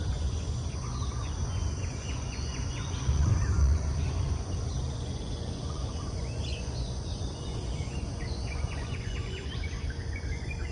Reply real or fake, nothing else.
fake